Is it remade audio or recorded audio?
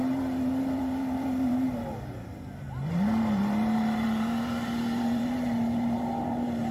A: remade